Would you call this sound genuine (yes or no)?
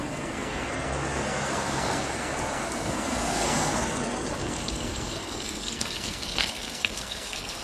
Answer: no